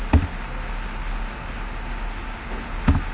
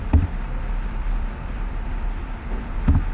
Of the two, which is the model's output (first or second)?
second